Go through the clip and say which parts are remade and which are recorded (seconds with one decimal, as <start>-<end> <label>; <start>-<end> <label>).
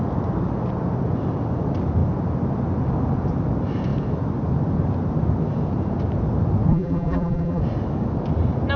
0.0-6.7 recorded; 6.7-7.6 remade; 7.6-8.8 recorded